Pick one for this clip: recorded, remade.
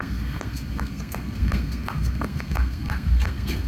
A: remade